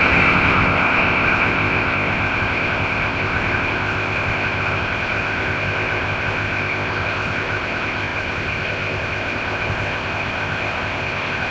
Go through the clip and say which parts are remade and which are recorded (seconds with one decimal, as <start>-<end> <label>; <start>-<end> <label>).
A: 0.0-11.5 remade